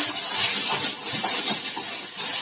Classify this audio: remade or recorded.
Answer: recorded